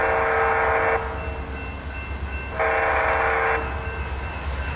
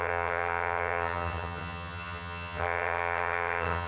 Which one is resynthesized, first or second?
second